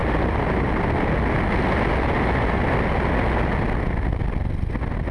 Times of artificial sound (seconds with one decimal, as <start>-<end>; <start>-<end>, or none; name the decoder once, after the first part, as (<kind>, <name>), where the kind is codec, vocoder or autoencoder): none